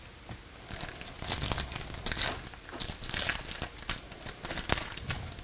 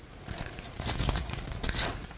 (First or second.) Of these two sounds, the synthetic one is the second